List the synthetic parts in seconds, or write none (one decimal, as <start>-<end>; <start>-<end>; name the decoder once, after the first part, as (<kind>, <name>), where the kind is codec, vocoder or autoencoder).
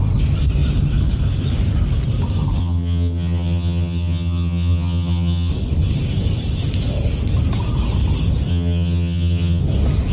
2.6-5.5 (vocoder, HiFi-GAN); 8.5-9.6